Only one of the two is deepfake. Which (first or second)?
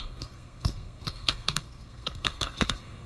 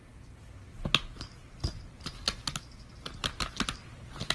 first